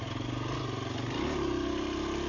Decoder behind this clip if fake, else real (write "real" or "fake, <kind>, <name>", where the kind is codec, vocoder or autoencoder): real